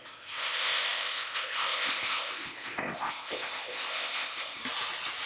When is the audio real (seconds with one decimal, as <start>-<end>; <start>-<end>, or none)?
4.6-5.3